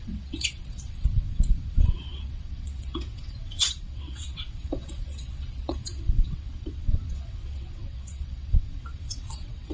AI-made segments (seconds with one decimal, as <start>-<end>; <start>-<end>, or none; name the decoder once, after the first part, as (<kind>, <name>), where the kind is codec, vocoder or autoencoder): 0.0-9.7 (vocoder, WaveNeXt)